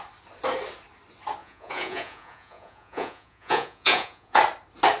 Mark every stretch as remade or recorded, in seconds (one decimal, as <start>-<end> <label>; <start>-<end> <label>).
0.0-1.4 recorded; 1.4-4.4 remade; 4.4-5.0 recorded